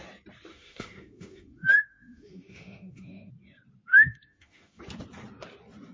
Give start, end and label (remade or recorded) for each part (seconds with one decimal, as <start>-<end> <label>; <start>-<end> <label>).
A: 0.0-0.5 recorded; 0.5-3.3 remade; 3.3-3.9 recorded; 3.9-4.8 remade; 4.8-5.9 recorded